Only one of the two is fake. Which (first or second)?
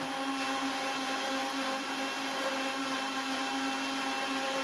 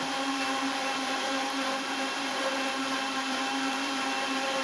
second